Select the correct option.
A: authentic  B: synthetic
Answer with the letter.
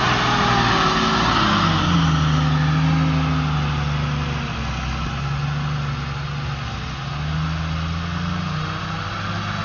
A